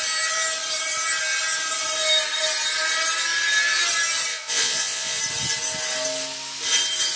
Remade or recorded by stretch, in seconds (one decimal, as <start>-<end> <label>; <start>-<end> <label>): 0.0-4.3 recorded; 4.3-5.2 remade; 5.2-7.2 recorded